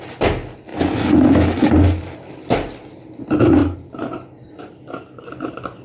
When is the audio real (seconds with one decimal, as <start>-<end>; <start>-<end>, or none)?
0.0-5.8

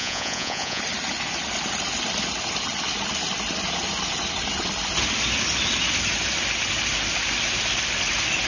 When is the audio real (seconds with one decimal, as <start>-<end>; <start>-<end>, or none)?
0.8-8.5

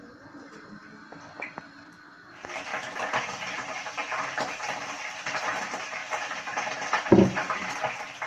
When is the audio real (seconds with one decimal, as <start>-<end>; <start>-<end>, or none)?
0.8-2.3; 2.7-3.3; 6.0-8.3